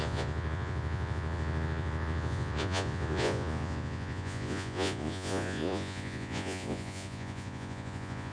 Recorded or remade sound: remade